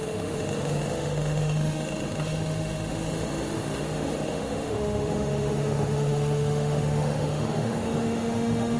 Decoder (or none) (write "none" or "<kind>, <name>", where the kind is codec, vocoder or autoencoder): autoencoder, DAC-VAE